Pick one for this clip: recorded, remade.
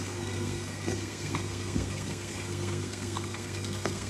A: remade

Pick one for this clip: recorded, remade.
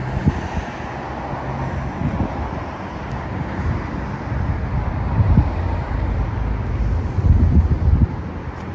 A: recorded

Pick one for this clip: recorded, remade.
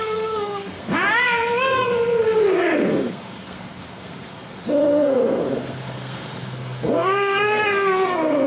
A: remade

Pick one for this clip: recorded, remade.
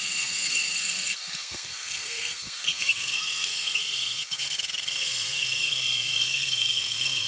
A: remade